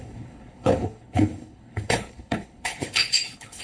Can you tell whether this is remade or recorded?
remade